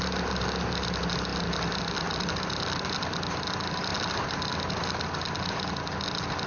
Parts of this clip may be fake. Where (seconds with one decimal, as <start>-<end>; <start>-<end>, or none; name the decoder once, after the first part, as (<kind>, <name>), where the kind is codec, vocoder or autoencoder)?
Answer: none

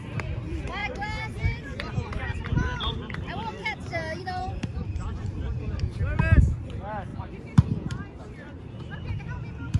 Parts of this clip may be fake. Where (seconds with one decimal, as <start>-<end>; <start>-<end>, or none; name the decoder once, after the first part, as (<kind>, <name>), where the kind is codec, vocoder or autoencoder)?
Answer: 0.8-6.0 (vocoder, BigVGAN v2); 7.1-9.2

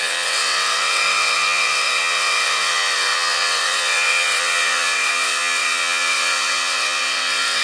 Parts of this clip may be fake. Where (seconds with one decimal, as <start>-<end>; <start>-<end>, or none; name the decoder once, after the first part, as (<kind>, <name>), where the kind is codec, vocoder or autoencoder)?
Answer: 0.0-7.6 (vocoder, WaveNeXt)

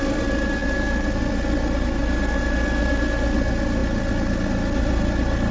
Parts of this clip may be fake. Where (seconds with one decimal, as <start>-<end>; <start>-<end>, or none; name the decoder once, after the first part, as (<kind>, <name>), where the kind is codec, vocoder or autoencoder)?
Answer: none

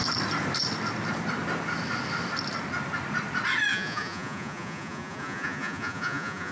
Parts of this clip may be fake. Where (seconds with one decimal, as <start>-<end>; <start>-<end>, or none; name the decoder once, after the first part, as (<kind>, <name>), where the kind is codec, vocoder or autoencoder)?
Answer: 3.7-6.5 (vocoder, Vocos)

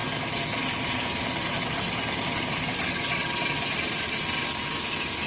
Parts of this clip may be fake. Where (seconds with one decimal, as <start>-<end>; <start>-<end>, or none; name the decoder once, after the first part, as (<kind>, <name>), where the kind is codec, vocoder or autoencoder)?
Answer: none

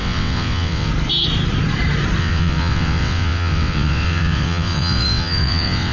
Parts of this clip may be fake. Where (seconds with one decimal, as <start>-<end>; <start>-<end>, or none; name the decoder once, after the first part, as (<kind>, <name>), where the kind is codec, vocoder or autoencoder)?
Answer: 0.0-0.9 (vocoder, WaveNeXt); 2.2-5.9